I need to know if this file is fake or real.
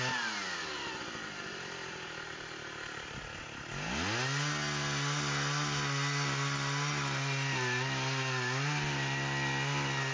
real